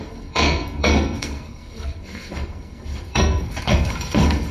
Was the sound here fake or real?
fake